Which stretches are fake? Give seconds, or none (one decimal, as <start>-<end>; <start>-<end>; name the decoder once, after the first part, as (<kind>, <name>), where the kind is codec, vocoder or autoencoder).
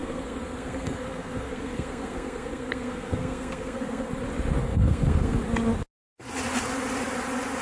0.0-4.1 (codec, SNAC); 4.6-5.4